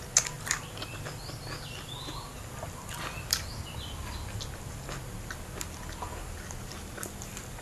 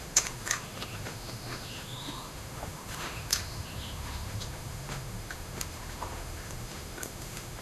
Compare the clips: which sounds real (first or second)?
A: first